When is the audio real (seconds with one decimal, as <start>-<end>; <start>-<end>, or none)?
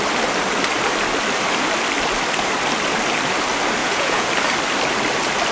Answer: 0.0-3.8; 4.3-5.5